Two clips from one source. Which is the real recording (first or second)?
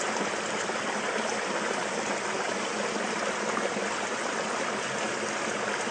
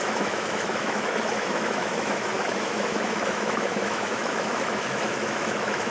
first